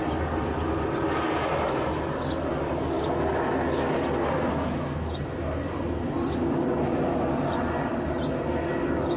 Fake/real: real